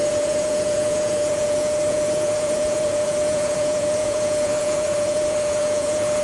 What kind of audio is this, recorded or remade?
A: remade